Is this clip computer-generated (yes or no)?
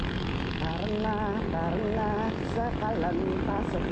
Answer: no